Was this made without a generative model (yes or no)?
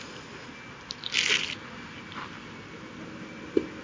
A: yes